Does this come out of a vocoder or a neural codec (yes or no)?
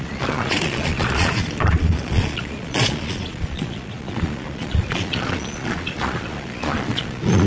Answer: yes